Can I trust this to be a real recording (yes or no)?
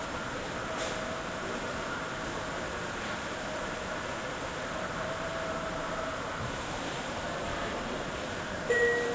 no